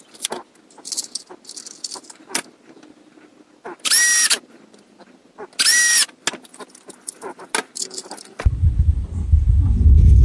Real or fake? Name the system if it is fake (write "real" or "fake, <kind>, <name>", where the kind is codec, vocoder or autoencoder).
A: real